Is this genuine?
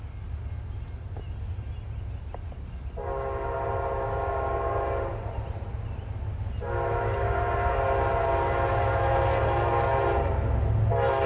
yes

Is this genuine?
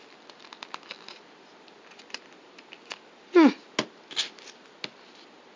yes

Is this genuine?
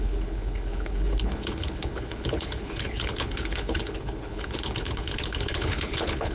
no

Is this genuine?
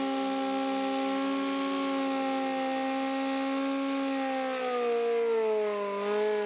yes